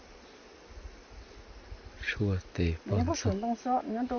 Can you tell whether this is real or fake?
real